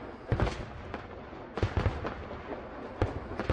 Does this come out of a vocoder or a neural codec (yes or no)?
no